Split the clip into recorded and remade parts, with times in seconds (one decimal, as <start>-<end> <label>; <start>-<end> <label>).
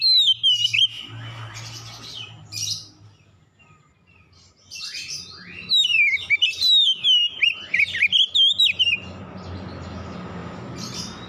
0.0-11.3 recorded